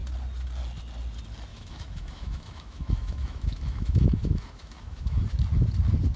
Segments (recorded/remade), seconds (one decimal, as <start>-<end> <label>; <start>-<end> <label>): 0.0-1.5 recorded; 1.5-5.2 remade; 5.2-6.2 recorded

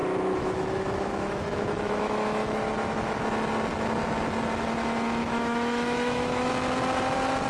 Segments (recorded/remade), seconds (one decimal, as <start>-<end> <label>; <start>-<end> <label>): 0.0-3.2 remade; 3.2-5.2 recorded; 5.2-6.5 remade; 6.5-7.5 recorded

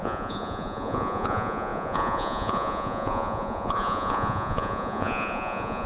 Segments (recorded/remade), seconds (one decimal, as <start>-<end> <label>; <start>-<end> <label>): 0.0-5.9 remade

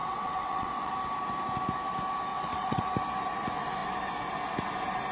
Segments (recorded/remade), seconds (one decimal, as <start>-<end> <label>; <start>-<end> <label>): 0.0-0.9 remade; 0.9-2.3 recorded; 2.3-2.8 remade; 2.8-5.1 recorded

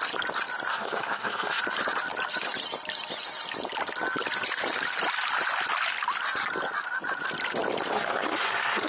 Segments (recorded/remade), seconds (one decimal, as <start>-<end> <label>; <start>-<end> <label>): 0.0-0.7 recorded; 0.7-1.6 remade; 1.6-7.9 recorded; 7.9-8.9 remade

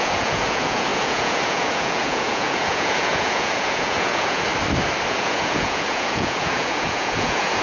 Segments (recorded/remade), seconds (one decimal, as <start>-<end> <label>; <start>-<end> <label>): 0.0-4.5 remade; 4.5-5.1 recorded; 5.1-7.6 remade

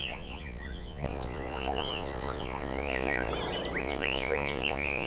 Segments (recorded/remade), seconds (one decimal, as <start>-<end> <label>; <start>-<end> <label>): 0.0-3.3 remade; 3.3-3.8 recorded; 3.8-5.1 remade

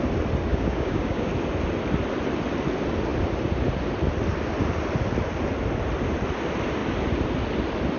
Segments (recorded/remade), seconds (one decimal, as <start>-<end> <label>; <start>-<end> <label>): 0.0-0.5 recorded; 0.5-1.3 remade; 1.3-8.0 recorded